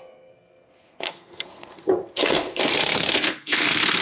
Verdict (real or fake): fake